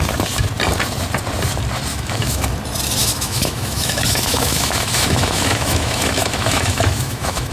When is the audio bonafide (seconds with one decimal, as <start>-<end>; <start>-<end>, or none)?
0.0-1.9; 2.5-3.0